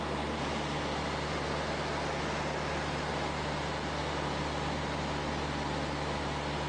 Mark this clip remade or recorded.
recorded